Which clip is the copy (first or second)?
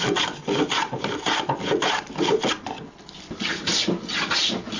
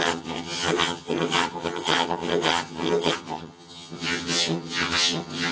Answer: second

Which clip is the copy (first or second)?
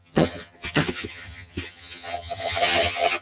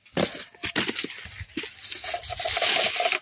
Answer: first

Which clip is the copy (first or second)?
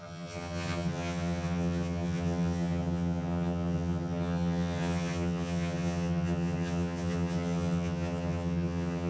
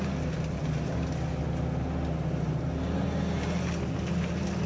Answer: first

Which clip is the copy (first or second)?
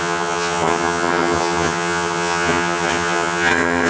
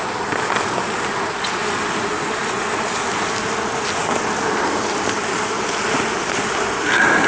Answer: first